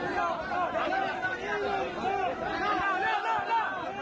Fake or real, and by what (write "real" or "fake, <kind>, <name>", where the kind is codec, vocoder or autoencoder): real